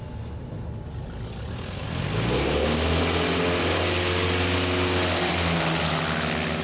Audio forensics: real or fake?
real